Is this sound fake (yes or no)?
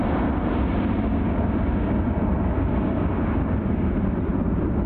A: no